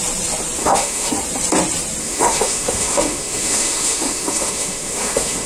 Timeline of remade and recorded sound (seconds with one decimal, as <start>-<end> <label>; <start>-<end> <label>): 0.0-0.6 recorded; 0.6-1.1 remade; 1.1-2.0 recorded; 2.0-5.5 remade